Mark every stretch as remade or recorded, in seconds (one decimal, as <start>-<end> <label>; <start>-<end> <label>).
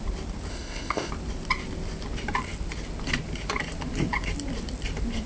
0.0-0.5 recorded; 0.5-1.1 remade; 1.1-5.3 recorded